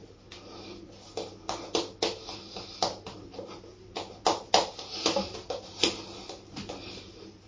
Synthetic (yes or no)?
no